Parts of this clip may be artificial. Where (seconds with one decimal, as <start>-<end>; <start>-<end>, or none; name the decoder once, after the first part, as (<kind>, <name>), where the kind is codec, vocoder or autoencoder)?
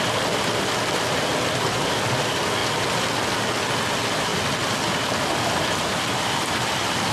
4.3-6.2 (vocoder, BigVGAN v2)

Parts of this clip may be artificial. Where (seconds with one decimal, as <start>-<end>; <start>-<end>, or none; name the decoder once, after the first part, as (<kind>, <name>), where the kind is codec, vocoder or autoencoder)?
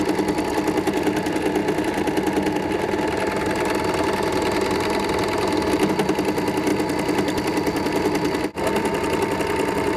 none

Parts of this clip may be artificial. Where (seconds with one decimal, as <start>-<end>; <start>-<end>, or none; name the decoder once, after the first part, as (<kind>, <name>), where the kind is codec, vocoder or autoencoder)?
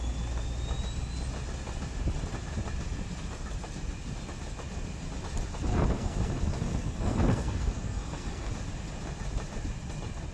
5.7-8.5 (codec, SNAC)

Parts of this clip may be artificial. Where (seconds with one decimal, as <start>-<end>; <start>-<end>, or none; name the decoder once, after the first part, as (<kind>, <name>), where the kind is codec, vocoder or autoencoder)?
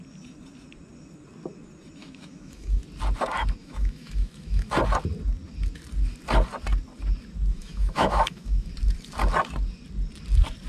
2.0-2.8 (autoencoder, DAC-VAE); 3.6-4.7; 7.5-8.7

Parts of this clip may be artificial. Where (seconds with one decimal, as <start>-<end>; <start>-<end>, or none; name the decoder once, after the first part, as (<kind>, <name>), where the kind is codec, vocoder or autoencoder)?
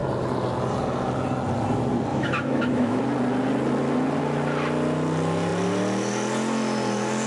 2.1-3.0 (autoencoder, DAC-VAE)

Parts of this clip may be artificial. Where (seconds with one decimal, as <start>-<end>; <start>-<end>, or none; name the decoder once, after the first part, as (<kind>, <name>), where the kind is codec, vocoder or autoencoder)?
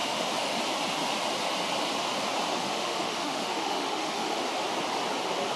0.0-0.6 (autoencoder, DAC-VAE); 2.5-4.4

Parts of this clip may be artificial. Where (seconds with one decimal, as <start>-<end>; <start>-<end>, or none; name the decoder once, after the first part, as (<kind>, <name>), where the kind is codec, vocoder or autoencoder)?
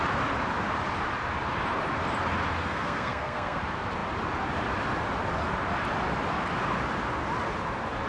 2.6-3.6 (codec, SNAC)